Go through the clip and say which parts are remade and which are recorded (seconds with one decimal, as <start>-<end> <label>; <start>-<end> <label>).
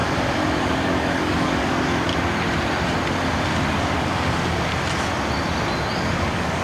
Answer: 0.0-0.6 recorded; 0.6-2.1 remade; 2.1-3.8 recorded; 3.8-4.7 remade; 4.7-6.0 recorded; 6.0-6.6 remade